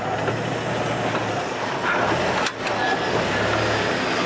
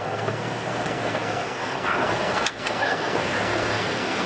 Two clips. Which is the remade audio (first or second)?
second